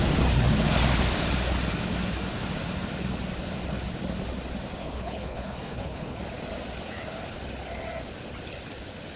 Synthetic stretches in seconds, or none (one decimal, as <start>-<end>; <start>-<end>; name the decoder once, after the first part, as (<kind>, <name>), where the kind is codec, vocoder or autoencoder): 4.8-6.2 (codec, HILCodec)